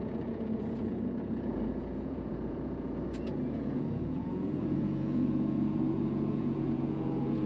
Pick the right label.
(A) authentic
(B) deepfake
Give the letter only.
B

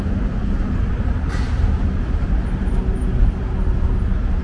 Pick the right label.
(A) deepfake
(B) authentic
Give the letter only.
B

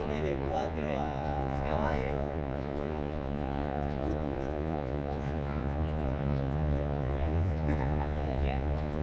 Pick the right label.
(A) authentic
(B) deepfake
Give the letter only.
B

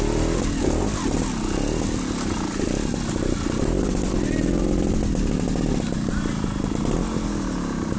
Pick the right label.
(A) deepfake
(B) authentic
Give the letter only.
B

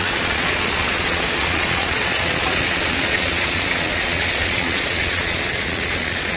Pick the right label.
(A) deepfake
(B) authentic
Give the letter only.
A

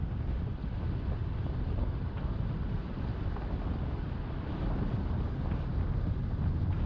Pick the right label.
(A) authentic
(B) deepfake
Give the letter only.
A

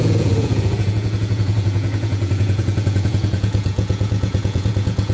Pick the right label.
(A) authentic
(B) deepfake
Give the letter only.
B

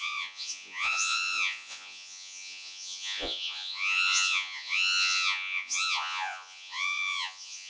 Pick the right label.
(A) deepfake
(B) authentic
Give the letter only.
A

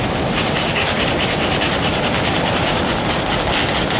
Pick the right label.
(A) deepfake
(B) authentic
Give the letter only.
B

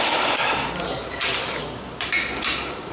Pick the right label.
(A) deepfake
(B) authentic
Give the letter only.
B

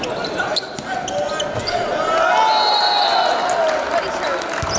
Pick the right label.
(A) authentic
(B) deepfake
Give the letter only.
A